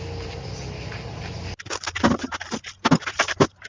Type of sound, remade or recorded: recorded